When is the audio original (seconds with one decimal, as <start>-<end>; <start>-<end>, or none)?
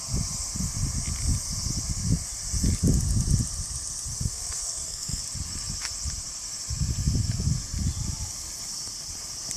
0.0-4.1; 5.2-9.6